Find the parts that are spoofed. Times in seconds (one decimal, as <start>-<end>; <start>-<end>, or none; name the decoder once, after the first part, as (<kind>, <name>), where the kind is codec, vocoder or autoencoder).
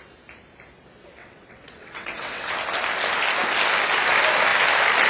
1.2-2.5 (vocoder, WaveNeXt)